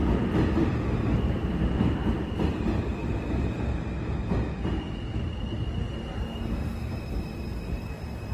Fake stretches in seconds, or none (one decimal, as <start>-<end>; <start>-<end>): 1.5-3.0; 7.1-8.3